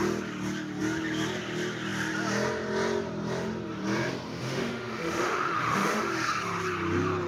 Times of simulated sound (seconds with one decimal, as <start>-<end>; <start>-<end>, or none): 4.3-6.1